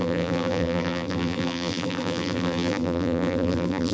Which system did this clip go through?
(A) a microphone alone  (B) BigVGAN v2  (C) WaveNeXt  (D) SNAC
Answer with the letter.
B